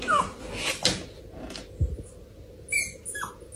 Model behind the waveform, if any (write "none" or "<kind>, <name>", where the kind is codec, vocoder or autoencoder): none